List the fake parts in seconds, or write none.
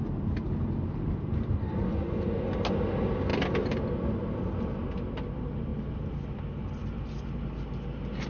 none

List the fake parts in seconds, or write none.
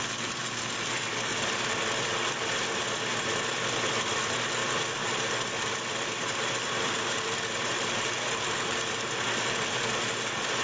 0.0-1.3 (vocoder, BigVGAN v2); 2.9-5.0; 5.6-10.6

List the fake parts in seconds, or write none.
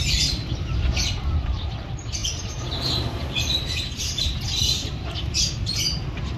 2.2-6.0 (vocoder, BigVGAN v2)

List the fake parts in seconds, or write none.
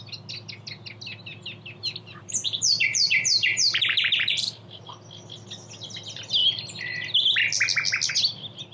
1.8-4.9 (vocoder, BigVGAN v2)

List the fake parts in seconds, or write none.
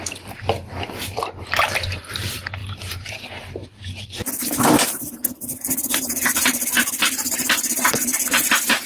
2.6-3.1 (vocoder, BigVGAN v2); 3.6-8.5